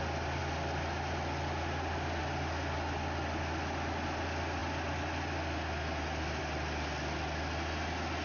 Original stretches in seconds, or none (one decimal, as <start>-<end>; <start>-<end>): 0.0-8.2